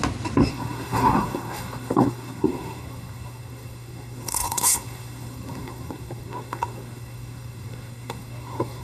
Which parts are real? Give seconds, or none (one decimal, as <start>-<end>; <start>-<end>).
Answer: 0.0-0.5